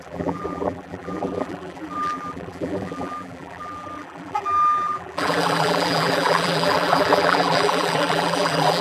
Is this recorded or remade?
remade